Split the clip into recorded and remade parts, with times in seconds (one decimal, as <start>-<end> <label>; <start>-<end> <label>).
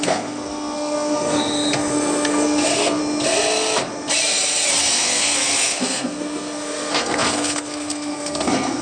0.0-3.0 remade; 3.0-4.8 recorded; 4.8-8.8 remade